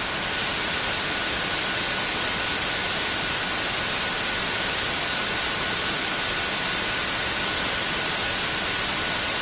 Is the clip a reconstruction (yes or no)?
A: no